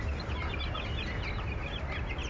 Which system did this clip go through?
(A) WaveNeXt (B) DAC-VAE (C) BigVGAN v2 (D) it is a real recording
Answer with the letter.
D